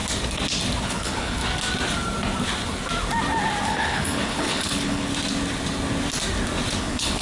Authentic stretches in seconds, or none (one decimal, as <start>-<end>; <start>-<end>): 0.0-0.8; 1.4-3.6; 5.1-6.8